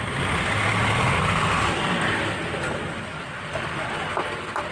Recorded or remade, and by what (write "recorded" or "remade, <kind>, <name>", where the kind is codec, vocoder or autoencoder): recorded